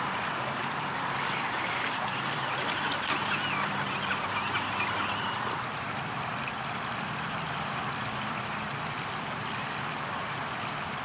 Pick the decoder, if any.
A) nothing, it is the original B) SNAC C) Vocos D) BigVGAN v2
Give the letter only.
D